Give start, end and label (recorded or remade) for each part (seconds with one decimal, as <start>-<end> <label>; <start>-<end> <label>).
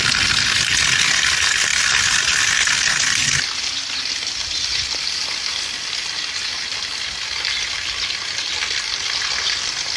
0.0-10.0 recorded